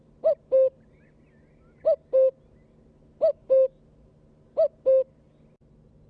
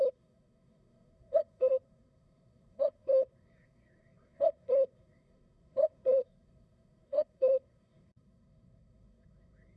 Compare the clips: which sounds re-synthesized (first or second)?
second